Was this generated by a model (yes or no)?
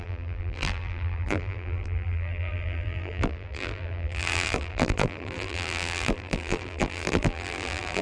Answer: yes